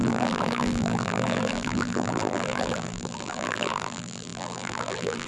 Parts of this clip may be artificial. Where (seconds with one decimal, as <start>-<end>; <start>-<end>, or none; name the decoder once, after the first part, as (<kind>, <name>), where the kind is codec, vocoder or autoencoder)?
0.0-5.3 (vocoder, BigVGAN v2)